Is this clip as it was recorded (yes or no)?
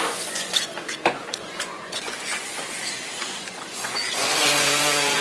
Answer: no